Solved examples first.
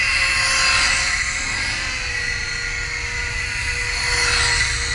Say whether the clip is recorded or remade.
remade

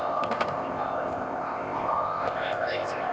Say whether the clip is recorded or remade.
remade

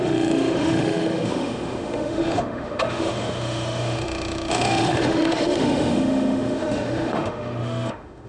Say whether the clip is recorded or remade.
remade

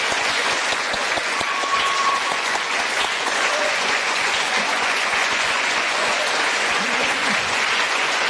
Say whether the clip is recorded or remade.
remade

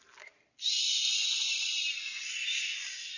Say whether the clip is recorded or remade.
recorded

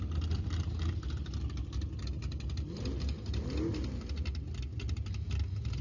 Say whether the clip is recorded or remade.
recorded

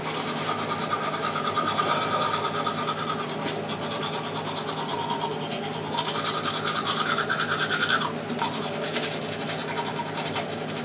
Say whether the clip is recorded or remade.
recorded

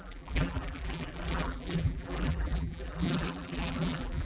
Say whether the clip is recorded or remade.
remade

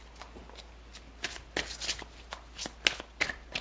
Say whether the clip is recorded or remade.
recorded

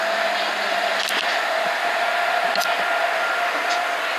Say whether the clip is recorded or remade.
remade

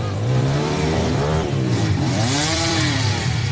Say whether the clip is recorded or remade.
remade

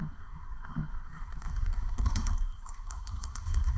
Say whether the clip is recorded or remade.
remade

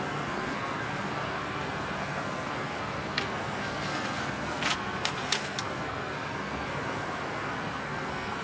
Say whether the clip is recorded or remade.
remade